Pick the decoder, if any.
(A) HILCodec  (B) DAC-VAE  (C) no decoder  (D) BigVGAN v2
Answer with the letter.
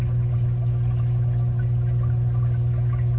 C